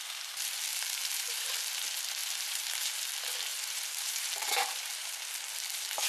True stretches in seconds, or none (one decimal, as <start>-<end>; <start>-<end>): 0.0-0.7; 1.5-2.2; 2.9-3.5; 5.1-6.1